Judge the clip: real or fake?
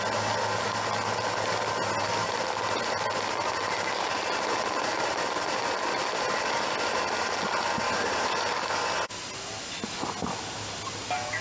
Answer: real